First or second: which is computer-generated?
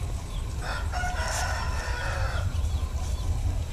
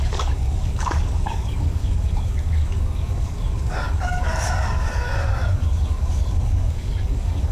second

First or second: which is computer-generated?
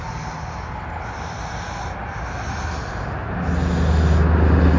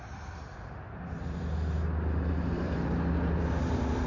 second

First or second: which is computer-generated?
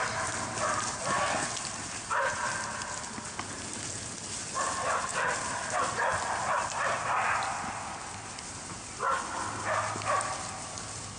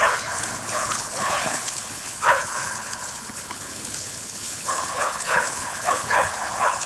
second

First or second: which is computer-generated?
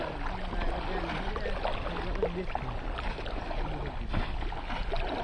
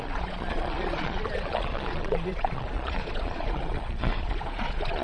second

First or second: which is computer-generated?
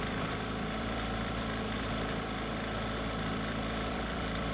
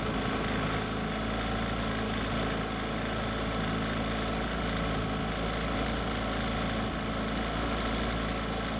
first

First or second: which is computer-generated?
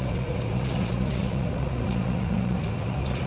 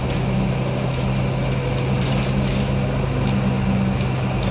first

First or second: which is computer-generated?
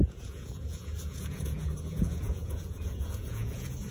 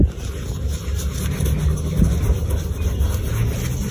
first